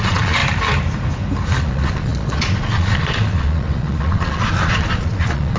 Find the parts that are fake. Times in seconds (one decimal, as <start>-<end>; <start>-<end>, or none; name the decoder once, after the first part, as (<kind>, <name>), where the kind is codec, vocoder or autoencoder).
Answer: 0.0-0.4 (vocoder, Vocos); 1.6-5.6